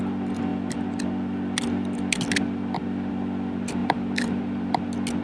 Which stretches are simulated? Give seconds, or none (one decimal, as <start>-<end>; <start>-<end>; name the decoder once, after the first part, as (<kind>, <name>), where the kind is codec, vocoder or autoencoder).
3.8-4.8 (vocoder, BigVGAN v2)